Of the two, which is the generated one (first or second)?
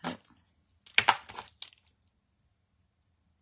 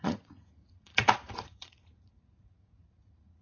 second